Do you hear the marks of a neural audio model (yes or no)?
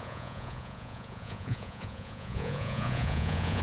yes